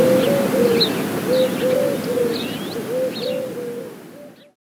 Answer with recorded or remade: recorded